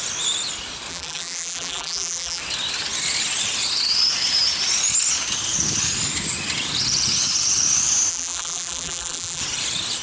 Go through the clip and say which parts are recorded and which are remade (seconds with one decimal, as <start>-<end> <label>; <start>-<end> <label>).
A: 0.0-0.9 recorded; 0.9-2.4 remade; 2.4-8.1 recorded; 8.1-9.4 remade; 9.4-10.0 recorded